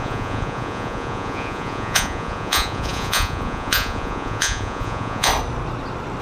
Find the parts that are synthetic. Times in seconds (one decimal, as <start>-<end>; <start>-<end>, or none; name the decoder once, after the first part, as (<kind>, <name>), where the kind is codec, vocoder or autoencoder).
0.0-5.3 (vocoder, Vocos)